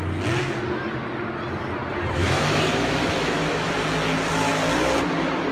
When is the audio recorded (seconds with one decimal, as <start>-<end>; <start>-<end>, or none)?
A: 0.0-2.2; 3.7-5.5